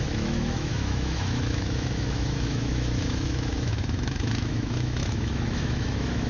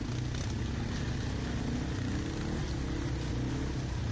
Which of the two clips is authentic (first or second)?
second